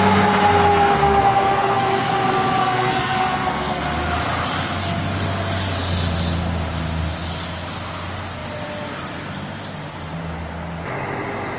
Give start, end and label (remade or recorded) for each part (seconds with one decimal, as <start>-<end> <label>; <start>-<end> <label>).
0.0-0.7 recorded; 0.7-2.1 remade; 2.1-2.6 recorded; 2.6-3.8 remade; 3.8-11.6 recorded